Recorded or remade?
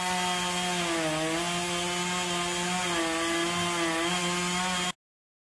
recorded